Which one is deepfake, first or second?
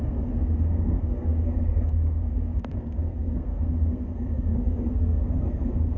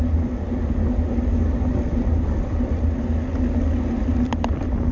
first